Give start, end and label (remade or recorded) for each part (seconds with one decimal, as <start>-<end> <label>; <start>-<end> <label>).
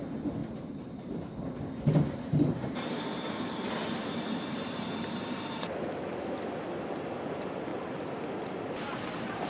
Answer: 0.0-0.4 recorded; 0.4-5.5 remade; 5.5-7.7 recorded; 7.7-9.5 remade